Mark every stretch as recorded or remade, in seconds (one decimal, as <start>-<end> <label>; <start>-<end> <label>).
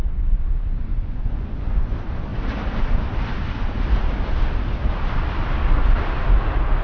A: 0.0-0.9 recorded; 0.9-1.9 remade; 1.9-6.8 recorded